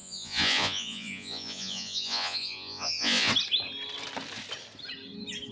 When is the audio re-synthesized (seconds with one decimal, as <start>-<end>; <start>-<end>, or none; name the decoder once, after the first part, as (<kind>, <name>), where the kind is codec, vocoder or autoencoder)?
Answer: 0.0-3.3 (vocoder, Vocos)